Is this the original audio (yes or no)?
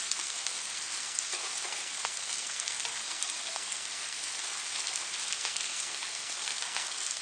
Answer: no